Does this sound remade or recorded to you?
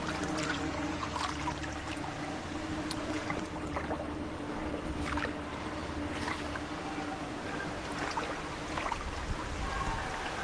recorded